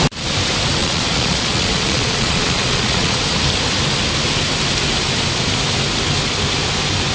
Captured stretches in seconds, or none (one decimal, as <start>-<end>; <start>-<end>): 0.0-0.8; 3.2-7.1